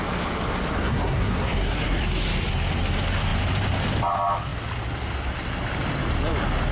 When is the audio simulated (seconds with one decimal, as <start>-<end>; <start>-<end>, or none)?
0.8-2.0